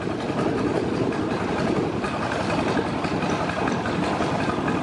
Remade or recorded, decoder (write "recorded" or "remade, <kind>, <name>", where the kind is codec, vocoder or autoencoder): remade, vocoder, BigVGAN v2